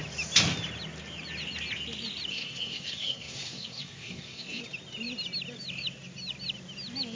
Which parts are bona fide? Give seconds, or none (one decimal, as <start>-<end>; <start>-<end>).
0.0-2.3; 4.6-7.2